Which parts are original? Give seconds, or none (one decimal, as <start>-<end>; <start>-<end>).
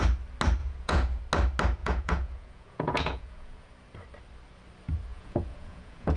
0.0-0.6; 1.2-1.8; 3.7-5.1